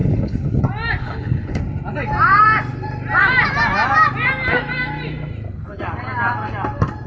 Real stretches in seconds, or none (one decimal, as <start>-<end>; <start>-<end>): 0.6-1.0; 1.6-7.1